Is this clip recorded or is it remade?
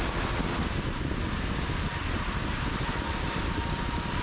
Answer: recorded